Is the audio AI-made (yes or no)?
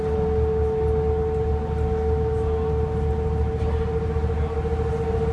no